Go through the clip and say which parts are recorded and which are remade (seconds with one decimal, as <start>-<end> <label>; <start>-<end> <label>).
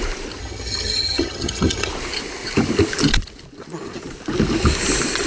0.0-0.4 recorded; 0.4-1.9 remade; 1.9-5.3 recorded